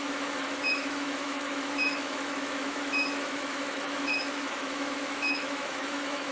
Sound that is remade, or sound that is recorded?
remade